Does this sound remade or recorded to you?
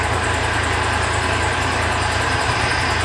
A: recorded